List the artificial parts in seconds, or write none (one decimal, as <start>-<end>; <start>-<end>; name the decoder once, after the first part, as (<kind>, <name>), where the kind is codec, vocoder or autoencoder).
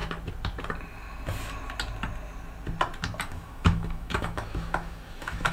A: 3.3-5.5 (autoencoder, DAC-VAE)